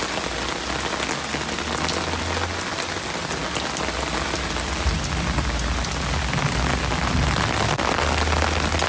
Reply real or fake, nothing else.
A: real